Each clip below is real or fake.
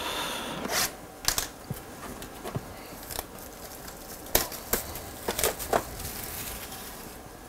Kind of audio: real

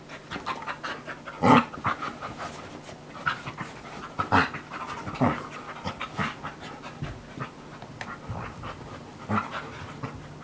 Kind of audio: real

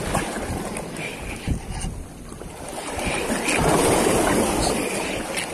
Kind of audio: real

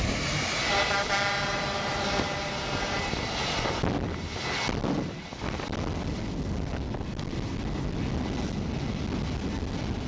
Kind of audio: real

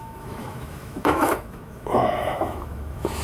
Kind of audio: fake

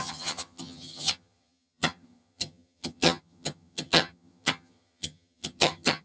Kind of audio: fake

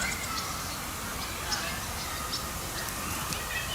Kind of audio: real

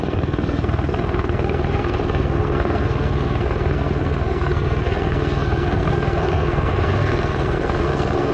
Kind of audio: fake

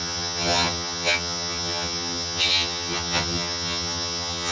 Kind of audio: fake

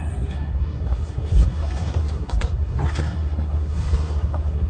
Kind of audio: fake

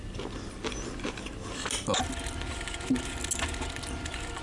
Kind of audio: real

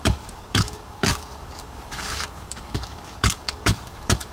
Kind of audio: fake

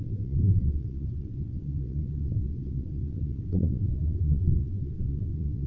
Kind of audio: fake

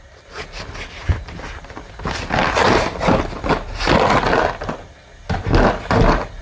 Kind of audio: real